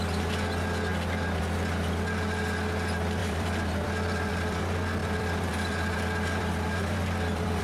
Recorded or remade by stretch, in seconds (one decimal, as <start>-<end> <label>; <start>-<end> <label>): 0.0-3.2 recorded; 3.2-4.6 remade; 4.6-5.0 recorded; 5.0-7.6 remade